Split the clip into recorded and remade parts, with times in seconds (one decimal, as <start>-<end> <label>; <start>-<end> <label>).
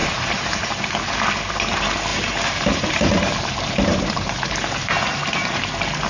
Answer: 0.0-0.9 remade; 0.9-2.1 recorded; 2.1-5.6 remade; 5.6-6.1 recorded